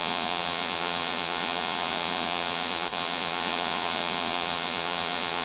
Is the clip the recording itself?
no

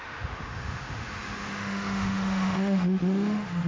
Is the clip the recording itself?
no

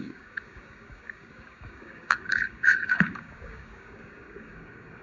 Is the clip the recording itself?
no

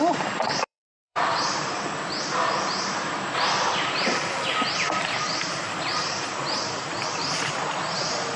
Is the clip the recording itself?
no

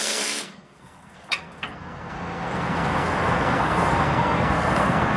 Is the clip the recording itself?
no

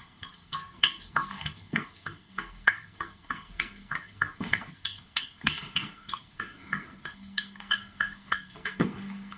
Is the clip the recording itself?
no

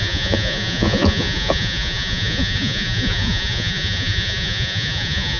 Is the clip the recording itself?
no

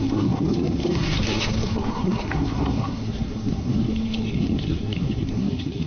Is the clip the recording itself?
no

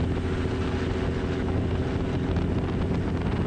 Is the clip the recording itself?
yes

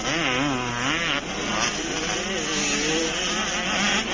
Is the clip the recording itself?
yes